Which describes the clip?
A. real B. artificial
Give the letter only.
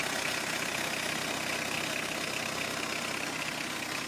A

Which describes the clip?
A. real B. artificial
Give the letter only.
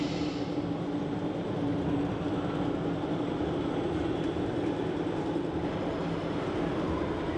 A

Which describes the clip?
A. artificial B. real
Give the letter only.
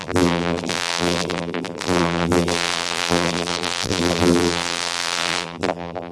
A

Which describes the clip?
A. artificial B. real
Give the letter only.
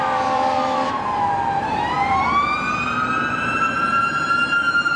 A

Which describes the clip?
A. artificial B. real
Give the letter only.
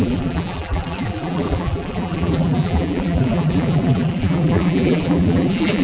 A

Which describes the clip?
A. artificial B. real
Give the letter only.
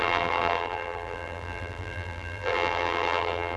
A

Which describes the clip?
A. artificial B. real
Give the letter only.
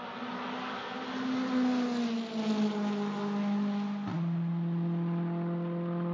B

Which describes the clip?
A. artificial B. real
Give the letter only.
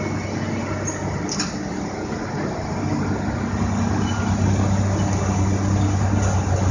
B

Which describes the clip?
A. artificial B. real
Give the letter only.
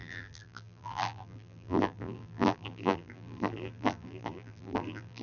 A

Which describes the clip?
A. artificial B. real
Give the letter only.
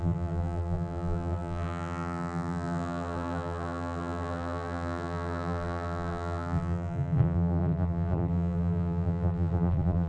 A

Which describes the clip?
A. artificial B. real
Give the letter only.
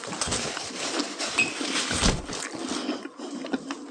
B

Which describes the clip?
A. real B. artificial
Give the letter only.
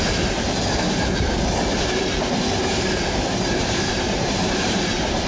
B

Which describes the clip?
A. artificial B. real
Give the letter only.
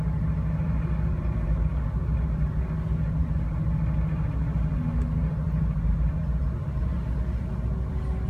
B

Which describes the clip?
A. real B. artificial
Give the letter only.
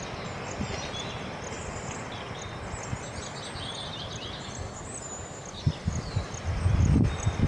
A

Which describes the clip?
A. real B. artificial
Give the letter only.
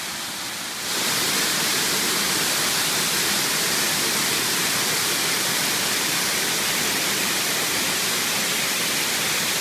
B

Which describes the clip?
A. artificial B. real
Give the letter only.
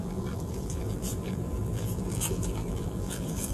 A